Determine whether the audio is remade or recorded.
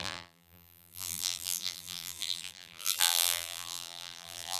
remade